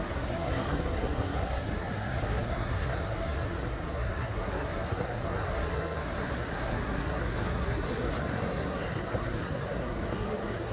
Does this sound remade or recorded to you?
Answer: remade